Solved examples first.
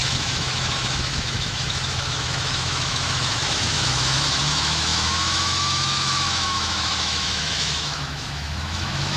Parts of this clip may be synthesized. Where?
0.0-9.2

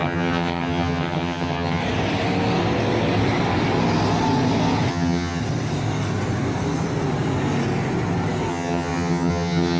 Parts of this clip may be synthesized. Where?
0.0-1.8; 4.9-5.4; 8.5-9.8